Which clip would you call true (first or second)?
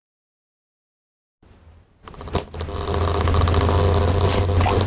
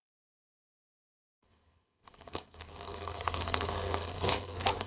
first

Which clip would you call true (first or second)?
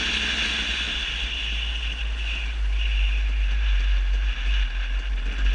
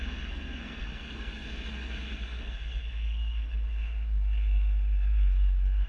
first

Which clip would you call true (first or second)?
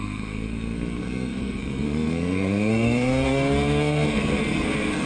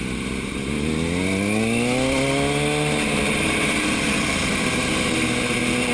second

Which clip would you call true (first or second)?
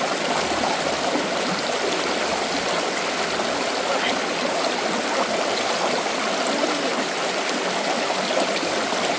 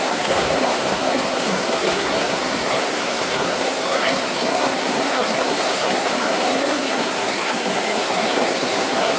first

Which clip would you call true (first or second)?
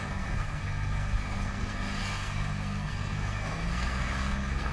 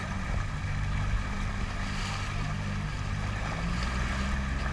second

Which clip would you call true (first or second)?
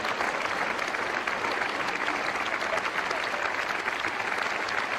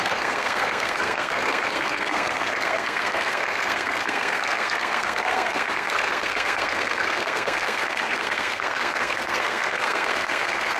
first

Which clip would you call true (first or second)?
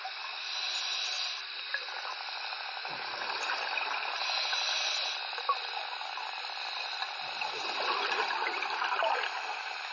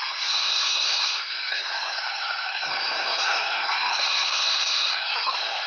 first